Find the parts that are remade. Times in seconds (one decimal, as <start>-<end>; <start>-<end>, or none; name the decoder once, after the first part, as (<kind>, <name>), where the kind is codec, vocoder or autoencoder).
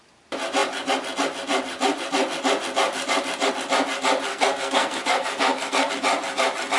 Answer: 4.3-5.9 (codec, SNAC)